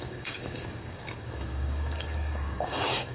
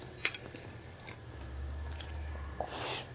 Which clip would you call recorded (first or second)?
second